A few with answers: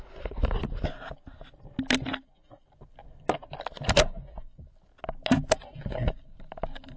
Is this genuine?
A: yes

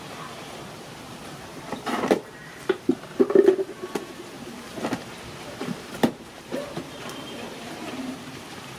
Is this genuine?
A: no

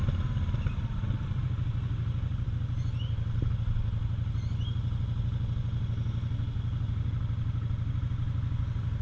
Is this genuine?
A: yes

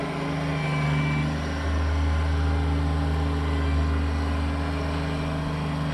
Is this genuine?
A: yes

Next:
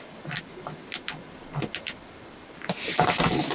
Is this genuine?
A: yes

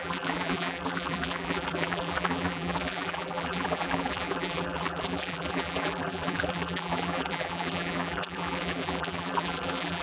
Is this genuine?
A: no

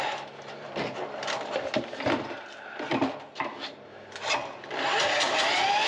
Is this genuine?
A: no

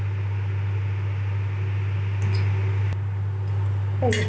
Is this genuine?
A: yes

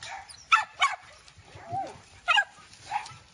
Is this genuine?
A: yes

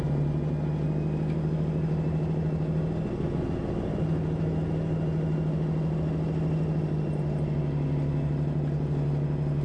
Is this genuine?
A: yes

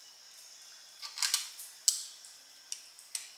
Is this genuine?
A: yes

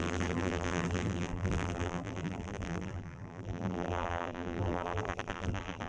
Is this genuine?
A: no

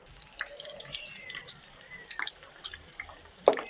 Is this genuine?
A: no